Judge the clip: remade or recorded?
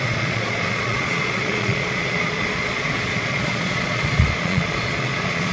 remade